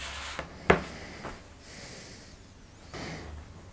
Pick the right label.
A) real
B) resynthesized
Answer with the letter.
A